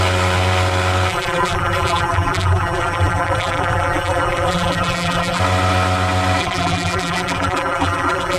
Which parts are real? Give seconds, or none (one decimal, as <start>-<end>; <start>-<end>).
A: 0.0-1.1; 5.4-6.4